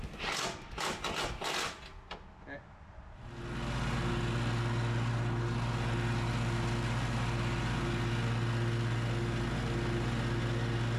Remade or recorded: recorded